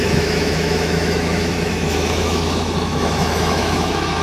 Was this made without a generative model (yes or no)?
no